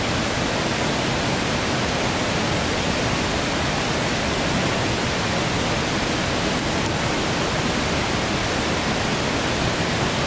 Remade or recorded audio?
recorded